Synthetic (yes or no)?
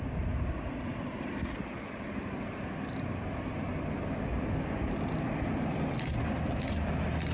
no